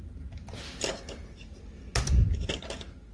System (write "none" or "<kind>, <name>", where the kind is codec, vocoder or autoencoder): none